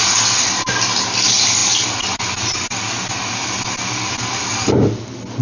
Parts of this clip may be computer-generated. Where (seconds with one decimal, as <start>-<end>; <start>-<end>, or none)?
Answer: none